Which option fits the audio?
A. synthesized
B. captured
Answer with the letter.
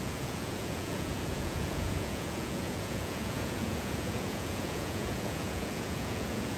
A